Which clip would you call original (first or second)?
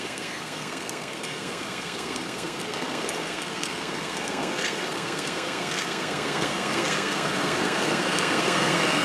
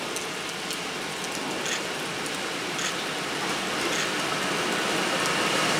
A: second